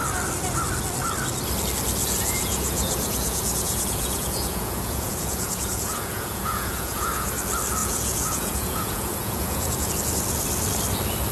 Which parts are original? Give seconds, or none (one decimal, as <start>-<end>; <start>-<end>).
0.0-2.0; 7.3-7.8; 9.9-11.3